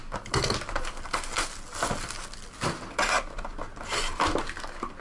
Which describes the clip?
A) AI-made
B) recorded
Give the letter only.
B